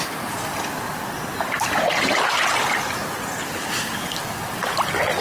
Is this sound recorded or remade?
recorded